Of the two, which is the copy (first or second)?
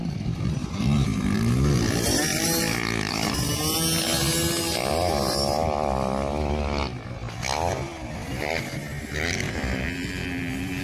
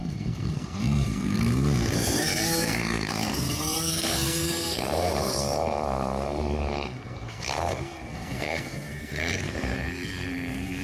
second